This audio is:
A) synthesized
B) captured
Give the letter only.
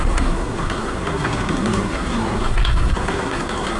A